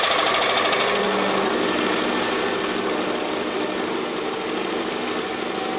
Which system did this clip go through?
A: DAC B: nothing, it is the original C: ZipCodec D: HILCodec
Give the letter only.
B